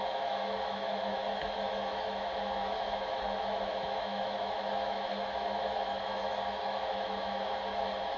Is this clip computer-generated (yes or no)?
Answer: yes